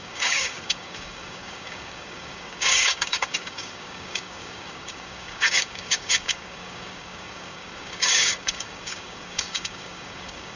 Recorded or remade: remade